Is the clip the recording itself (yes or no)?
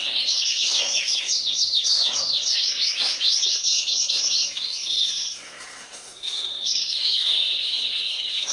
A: no